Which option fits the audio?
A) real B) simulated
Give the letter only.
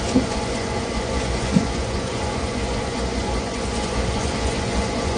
B